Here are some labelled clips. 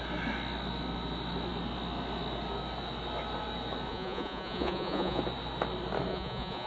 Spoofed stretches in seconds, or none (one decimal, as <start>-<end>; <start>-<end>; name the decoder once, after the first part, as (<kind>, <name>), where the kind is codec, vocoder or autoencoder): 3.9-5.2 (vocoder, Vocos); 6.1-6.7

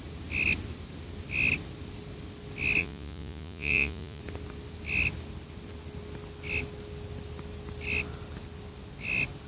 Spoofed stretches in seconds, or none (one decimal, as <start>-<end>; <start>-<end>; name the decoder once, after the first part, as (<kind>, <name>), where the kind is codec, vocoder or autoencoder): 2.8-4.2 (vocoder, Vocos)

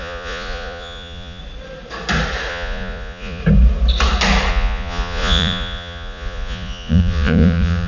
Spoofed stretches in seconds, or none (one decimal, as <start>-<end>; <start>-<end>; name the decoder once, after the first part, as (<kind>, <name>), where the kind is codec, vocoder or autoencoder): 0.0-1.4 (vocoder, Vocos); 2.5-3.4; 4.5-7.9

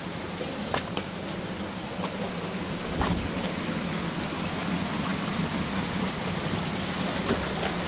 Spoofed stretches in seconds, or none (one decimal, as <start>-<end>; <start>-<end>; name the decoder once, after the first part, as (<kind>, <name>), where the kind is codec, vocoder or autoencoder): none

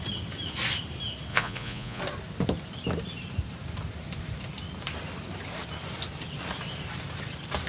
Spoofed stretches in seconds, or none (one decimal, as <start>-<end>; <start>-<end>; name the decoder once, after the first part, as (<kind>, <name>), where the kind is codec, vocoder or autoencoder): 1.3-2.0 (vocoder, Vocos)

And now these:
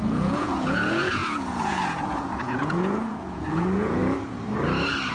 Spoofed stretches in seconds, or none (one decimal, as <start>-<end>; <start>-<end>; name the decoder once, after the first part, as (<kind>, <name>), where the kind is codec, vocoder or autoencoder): 0.0-4.0 (vocoder, Vocos)

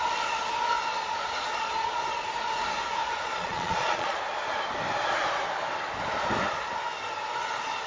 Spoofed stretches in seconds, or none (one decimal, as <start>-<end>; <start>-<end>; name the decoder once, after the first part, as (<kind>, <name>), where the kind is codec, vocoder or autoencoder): 0.9-2.0 (vocoder, Vocos); 3.0-4.2